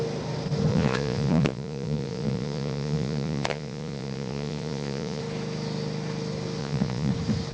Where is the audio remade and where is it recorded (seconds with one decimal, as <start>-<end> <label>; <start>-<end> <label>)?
0.0-0.7 recorded; 0.7-5.2 remade; 5.2-6.6 recorded; 6.6-7.1 remade; 7.1-7.5 recorded